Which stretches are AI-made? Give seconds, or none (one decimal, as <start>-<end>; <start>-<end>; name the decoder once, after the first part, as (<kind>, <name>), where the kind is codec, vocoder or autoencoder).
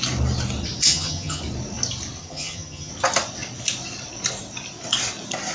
0.8-1.4 (vocoder, HiFi-GAN); 2.2-2.9